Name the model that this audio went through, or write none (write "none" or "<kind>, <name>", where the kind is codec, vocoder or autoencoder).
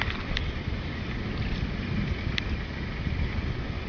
none